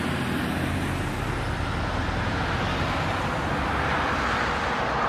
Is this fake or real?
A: real